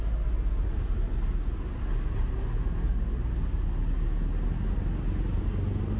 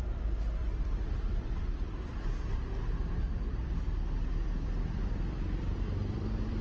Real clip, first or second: first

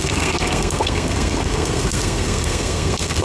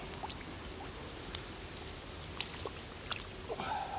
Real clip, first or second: second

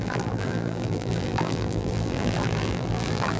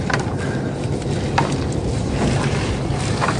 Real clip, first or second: second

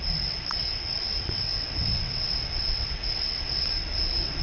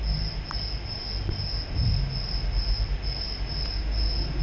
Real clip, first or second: second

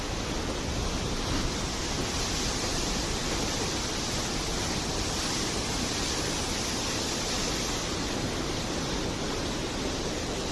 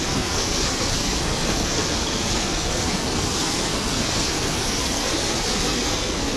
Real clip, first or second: first